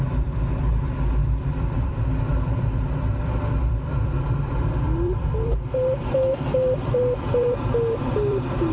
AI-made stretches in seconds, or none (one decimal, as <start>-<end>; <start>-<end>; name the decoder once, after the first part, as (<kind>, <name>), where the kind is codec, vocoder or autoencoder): 0.0-8.7 (vocoder, BigVGAN v2)